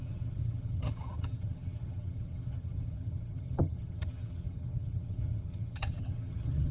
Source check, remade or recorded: remade